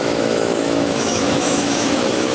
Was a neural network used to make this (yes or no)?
yes